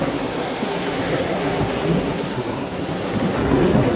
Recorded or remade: remade